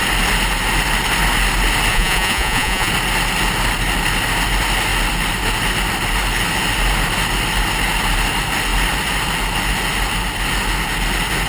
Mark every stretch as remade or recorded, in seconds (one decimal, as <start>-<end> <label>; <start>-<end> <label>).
0.0-1.9 recorded; 1.9-2.9 remade; 2.9-11.5 recorded